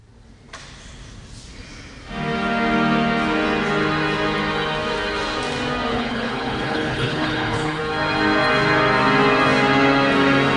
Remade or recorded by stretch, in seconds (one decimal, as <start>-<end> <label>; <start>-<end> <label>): 0.0-5.9 recorded; 5.9-7.8 remade; 7.8-10.6 recorded